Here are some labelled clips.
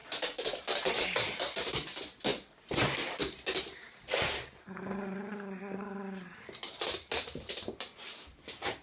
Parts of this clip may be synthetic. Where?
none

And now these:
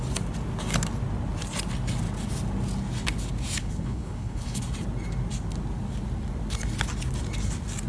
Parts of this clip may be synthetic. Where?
3.6-4.6 (codec, HILCodec)